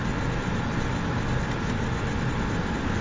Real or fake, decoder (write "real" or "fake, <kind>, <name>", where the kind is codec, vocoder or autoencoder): real